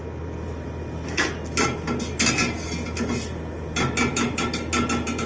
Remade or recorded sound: recorded